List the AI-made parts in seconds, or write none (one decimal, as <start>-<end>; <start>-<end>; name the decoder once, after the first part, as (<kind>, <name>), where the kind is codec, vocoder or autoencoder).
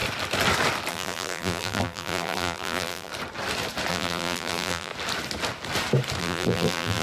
0.9-3.1 (vocoder, BigVGAN v2); 3.9-4.9; 6.2-7.0